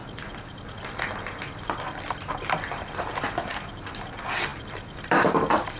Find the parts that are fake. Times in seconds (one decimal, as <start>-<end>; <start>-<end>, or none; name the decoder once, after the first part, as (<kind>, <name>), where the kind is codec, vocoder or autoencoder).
none